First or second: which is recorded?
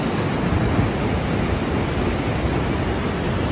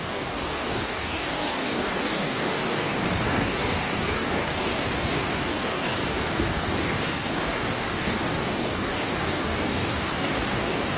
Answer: first